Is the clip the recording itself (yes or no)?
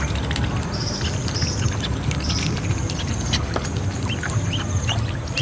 yes